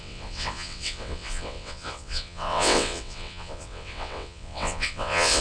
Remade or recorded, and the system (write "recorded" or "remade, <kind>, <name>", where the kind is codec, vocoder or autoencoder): remade, vocoder, WaveNeXt